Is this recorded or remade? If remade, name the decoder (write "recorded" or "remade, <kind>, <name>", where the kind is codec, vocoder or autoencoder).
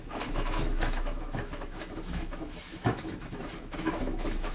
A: remade, autoencoder, DAC-VAE